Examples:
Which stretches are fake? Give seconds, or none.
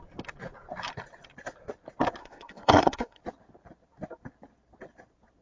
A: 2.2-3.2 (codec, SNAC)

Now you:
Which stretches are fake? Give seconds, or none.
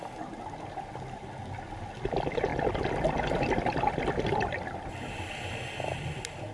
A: none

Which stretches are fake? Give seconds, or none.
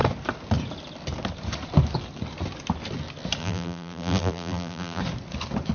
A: 3.4-5.0 (vocoder, BigVGAN v2)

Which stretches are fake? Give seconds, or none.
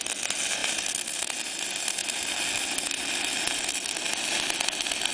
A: 0.6-1.4 (vocoder, BigVGAN v2)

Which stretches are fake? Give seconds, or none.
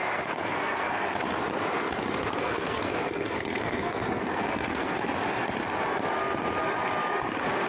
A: 0.0-0.9 (codec, SNAC); 2.4-5.1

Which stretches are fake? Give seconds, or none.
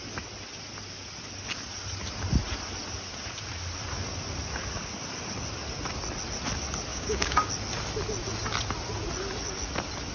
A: 6.9-7.5 (codec, DAC)